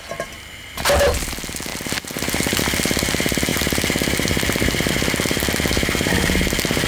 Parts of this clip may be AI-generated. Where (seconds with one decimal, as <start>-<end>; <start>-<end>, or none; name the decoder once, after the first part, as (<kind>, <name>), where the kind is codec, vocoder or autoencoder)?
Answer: none